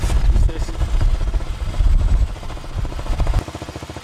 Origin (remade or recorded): recorded